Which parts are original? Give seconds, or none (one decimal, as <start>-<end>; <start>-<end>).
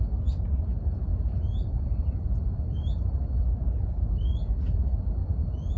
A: 0.0-5.8